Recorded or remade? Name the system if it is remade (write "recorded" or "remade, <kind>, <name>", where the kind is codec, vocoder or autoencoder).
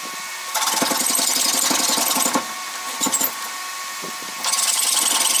recorded